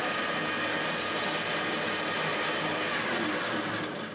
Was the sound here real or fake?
real